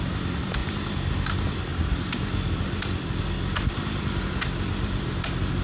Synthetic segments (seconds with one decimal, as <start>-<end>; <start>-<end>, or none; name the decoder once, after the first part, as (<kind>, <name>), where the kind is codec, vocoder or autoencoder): none